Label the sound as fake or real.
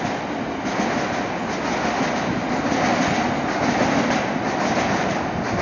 real